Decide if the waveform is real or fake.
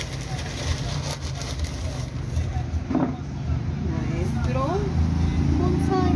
real